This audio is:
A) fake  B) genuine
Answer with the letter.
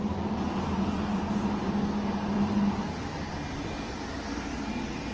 B